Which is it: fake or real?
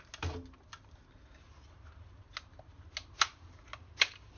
real